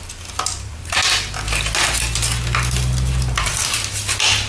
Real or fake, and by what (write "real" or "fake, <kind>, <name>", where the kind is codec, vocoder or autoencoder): real